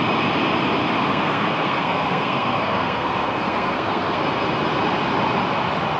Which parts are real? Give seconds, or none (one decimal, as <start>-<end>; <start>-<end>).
0.0-1.0; 4.2-6.0